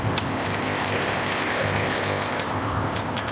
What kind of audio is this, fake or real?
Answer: fake